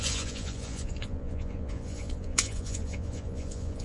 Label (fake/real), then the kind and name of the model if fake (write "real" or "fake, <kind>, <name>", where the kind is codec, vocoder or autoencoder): fake, vocoder, Vocos